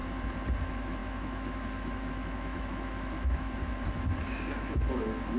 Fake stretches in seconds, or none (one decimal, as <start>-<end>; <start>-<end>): 0.6-5.4